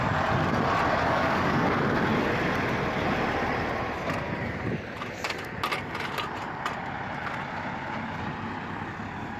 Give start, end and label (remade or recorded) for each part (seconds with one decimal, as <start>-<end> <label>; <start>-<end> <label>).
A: 0.0-1.0 recorded; 1.0-1.8 remade; 1.8-9.4 recorded